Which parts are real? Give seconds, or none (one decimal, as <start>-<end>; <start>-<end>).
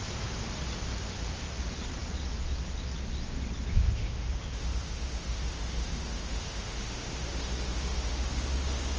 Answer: 0.0-3.7